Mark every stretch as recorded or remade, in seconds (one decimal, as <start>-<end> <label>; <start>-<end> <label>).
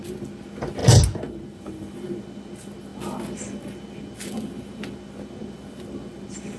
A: 0.0-6.6 recorded